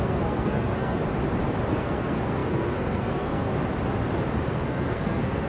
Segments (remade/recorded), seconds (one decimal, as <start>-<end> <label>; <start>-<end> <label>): 0.0-1.0 remade; 1.0-1.7 recorded; 1.7-3.5 remade; 3.5-4.5 recorded; 4.5-5.5 remade